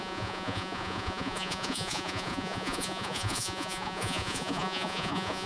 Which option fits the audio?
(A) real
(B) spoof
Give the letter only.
B